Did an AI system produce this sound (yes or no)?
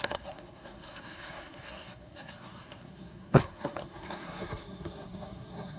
yes